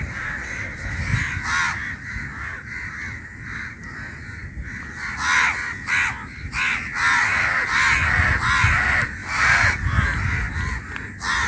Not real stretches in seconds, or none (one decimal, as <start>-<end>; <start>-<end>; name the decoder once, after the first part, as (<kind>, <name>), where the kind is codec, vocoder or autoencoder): 0.4-1.1 (vocoder, BigVGAN v2); 9.2-9.8